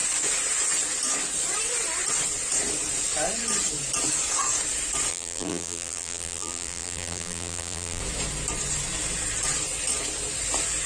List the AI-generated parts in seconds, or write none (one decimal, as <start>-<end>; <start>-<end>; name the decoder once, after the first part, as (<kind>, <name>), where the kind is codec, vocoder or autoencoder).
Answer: 5.1-8.0 (vocoder, BigVGAN v2)